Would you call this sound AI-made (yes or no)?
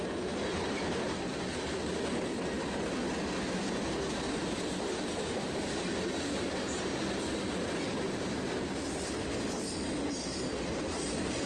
no